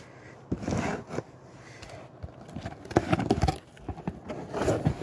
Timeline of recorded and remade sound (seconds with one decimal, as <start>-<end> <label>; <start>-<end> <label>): 0.0-5.0 recorded